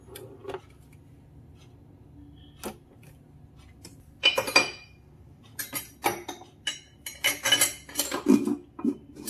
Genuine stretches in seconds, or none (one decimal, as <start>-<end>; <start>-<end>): 0.0-9.3